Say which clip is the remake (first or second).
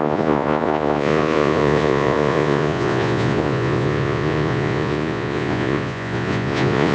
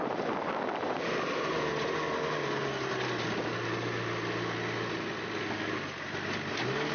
first